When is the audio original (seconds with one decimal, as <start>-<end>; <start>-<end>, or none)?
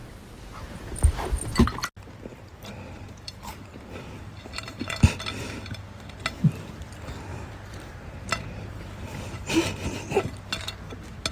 0.0-2.3; 5.8-7.3; 9.5-11.3